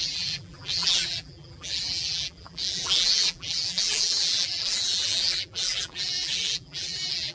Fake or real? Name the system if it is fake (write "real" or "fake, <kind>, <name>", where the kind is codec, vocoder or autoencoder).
fake, vocoder, BigVGAN v2